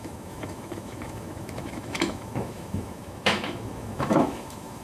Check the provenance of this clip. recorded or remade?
remade